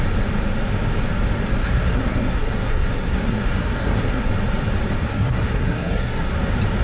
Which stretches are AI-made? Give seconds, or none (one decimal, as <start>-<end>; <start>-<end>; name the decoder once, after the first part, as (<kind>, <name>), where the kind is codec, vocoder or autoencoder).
1.6-4.3 (codec, SNAC); 5.1-6.3